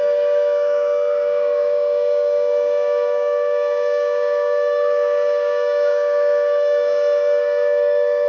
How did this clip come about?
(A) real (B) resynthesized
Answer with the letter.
B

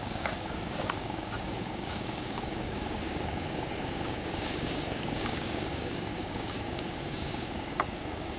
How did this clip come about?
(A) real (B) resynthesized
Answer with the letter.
B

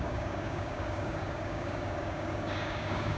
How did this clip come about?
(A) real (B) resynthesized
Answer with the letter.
B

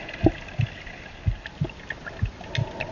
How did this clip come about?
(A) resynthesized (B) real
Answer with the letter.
B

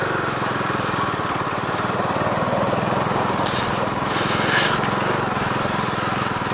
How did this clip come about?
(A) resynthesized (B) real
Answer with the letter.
B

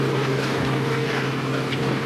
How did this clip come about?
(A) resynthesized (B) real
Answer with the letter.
A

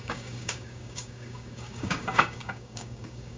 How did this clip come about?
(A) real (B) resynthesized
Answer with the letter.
B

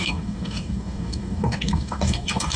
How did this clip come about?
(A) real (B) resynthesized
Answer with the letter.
B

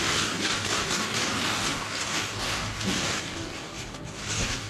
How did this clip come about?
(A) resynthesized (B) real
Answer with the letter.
A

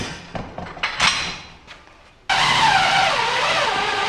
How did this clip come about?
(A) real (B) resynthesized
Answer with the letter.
A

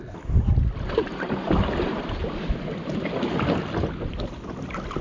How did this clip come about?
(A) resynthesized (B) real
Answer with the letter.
B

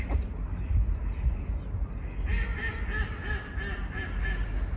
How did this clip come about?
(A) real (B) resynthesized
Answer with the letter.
A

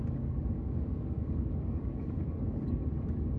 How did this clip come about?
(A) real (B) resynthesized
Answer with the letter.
B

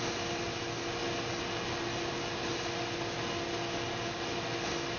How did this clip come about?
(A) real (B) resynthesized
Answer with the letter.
A